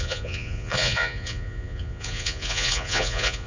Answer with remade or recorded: remade